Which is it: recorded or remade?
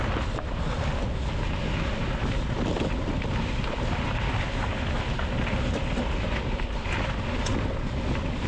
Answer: recorded